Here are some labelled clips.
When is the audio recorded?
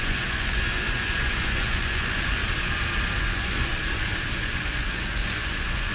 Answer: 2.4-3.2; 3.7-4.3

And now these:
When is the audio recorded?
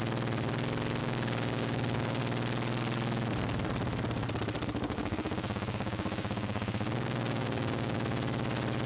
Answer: 0.0-1.0; 2.2-5.0; 8.0-8.9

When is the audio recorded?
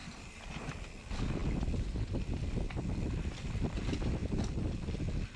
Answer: 0.7-5.4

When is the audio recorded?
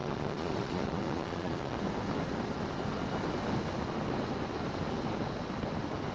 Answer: 1.8-6.1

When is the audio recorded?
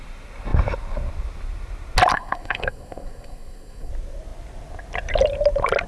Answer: 0.0-2.1; 3.9-5.9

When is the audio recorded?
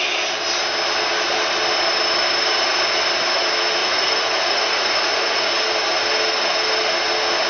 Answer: 0.0-3.8; 5.5-7.5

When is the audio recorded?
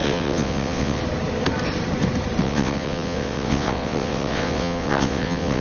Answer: 1.0-2.4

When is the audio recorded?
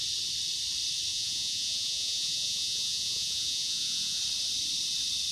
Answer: 0.0-1.1; 4.2-5.3